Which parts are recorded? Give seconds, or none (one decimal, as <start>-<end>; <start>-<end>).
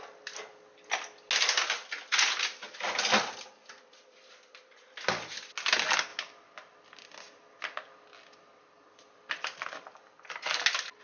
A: 0.0-11.0